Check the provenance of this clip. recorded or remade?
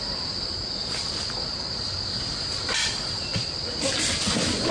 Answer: recorded